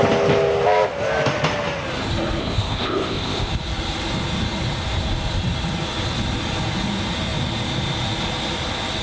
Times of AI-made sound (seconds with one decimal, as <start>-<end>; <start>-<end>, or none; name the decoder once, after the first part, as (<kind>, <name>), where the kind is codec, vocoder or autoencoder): 2.4-3.5 (codec, ZipCodec)